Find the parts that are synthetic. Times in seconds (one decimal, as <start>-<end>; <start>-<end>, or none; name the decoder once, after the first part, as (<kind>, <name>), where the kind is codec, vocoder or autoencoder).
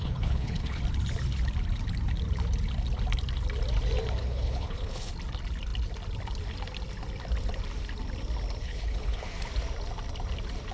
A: 0.0-0.8 (codec, HILCodec); 4.2-5.1; 8.6-9.3